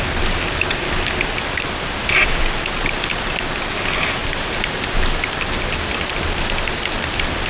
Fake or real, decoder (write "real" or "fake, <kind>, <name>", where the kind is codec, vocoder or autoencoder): real